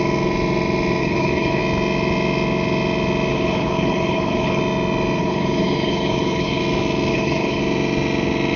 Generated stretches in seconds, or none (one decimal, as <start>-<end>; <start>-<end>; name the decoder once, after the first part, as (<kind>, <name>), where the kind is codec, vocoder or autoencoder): 1.0-1.6 (codec, HILCodec); 3.3-4.6; 5.2-6.6; 7.1-7.6